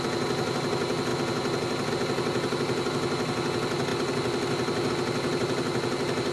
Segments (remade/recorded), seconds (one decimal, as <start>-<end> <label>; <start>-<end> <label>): 0.0-6.3 recorded